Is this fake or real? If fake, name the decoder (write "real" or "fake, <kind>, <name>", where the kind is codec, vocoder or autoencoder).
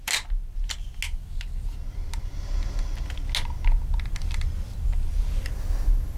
real